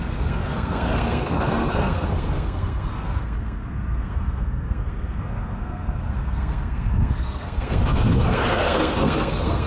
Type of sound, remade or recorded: remade